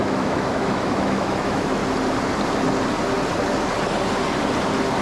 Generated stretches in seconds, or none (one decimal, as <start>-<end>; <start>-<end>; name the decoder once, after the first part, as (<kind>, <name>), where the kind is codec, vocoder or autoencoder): 0.0-1.8 (autoencoder, DAC-VAE)